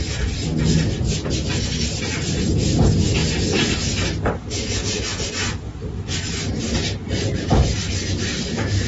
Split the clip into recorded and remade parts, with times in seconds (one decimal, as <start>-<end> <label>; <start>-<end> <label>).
0.0-8.9 recorded